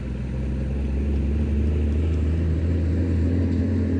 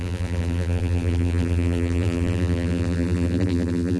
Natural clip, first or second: first